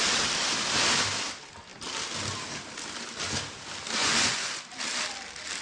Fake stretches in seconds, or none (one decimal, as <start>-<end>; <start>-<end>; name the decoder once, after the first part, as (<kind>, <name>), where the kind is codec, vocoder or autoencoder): 4.0-4.6 (vocoder, Vocos)